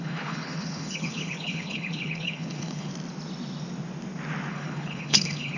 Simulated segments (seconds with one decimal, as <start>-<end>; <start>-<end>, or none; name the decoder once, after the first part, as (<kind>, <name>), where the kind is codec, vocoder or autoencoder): 0.0-2.9 (codec, HILCodec); 4.5-5.6